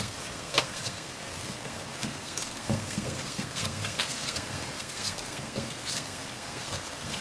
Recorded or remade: remade